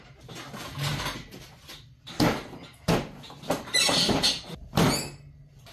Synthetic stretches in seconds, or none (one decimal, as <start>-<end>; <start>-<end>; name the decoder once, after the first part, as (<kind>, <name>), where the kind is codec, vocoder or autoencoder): none